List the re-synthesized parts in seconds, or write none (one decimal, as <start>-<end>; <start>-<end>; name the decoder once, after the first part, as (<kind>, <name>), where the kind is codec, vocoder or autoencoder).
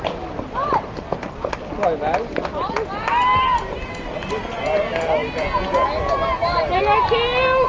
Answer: none